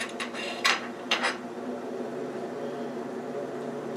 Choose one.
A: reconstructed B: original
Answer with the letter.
A